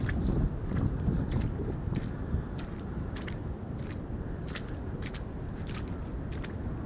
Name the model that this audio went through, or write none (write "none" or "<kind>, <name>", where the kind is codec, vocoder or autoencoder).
none